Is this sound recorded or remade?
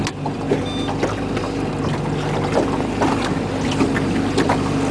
recorded